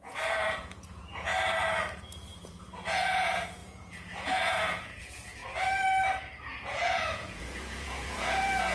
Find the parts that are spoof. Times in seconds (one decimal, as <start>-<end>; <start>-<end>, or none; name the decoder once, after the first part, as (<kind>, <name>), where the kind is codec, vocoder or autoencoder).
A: 0.0-1.3 (vocoder, Vocos); 2.0-5.4; 6.4-8.7